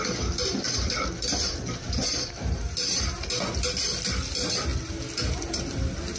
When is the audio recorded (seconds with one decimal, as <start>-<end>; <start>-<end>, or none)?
0.0-6.2